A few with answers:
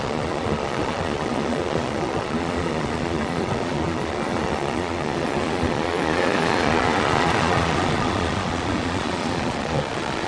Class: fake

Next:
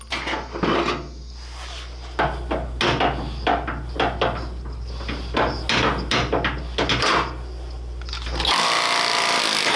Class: real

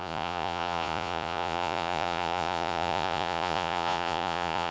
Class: fake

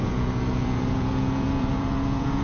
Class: fake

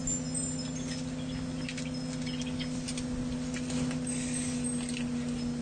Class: real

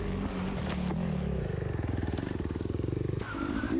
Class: real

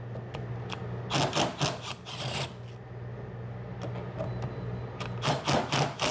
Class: real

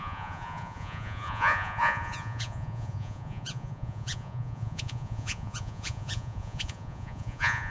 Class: fake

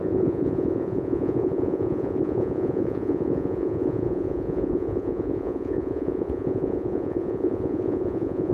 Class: fake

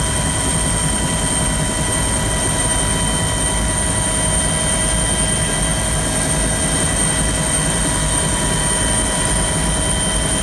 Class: real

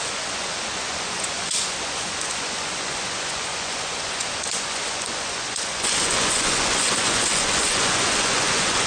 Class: fake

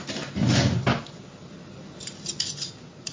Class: real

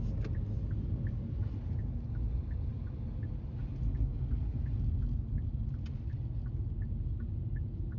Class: real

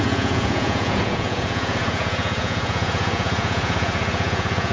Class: fake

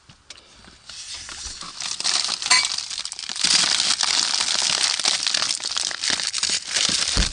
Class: real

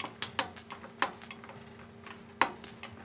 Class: real